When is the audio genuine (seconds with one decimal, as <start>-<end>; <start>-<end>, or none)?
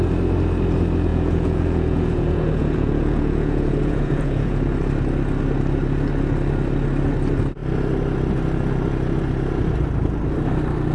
0.0-1.1; 4.7-10.9